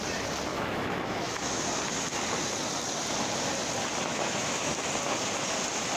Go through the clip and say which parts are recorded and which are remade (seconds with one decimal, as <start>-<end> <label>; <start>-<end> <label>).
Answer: 0.0-0.5 recorded; 0.5-1.6 remade; 1.6-4.1 recorded; 4.1-4.7 remade; 4.7-6.0 recorded